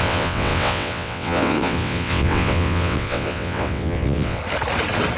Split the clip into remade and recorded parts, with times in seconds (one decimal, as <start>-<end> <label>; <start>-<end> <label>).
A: 0.0-4.4 remade; 4.4-5.2 recorded